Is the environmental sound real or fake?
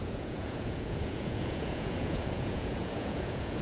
fake